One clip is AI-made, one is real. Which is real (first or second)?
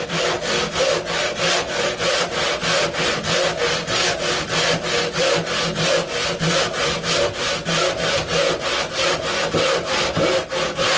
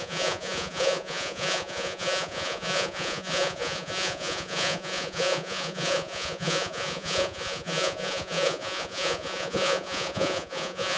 first